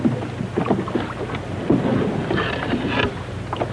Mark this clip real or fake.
real